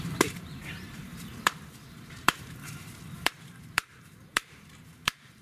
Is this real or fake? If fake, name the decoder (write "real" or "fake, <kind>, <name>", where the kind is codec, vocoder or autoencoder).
fake, vocoder, BigVGAN v2